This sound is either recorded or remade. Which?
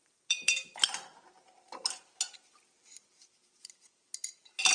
recorded